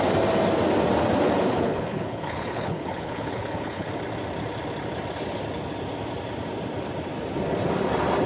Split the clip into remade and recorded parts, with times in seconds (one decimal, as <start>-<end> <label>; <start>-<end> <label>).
0.0-1.5 recorded; 1.5-3.9 remade; 3.9-8.3 recorded